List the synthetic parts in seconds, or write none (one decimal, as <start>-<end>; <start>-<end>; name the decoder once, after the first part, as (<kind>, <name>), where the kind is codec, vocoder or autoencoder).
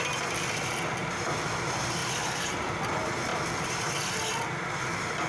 2.0-2.7 (vocoder, BigVGAN v2); 3.3-4.0